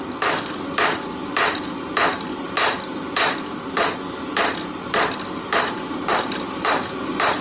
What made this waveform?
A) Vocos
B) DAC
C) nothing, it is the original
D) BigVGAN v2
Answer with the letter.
C